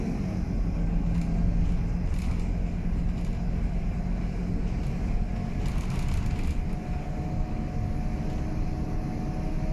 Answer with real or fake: real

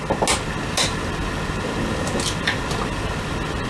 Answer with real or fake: real